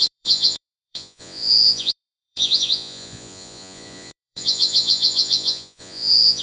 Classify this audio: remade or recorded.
remade